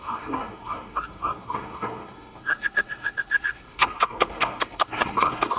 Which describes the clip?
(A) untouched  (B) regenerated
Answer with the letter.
B